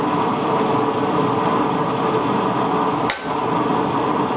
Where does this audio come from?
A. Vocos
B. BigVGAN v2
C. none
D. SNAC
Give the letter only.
C